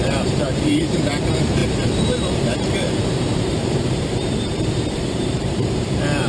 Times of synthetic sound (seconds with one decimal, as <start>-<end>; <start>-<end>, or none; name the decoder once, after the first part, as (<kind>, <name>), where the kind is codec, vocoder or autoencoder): 0.0-6.3 (vocoder, BigVGAN v2)

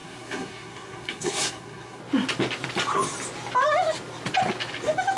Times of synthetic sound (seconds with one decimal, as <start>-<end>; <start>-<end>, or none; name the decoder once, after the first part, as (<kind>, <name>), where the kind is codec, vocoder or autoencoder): 0.0-2.0 (codec, SNAC)